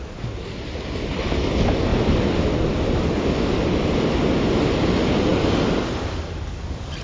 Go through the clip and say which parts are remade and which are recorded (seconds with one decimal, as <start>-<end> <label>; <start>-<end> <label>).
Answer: 0.0-7.0 recorded